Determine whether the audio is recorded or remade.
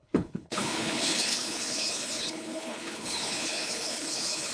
remade